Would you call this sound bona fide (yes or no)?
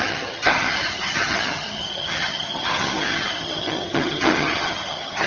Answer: no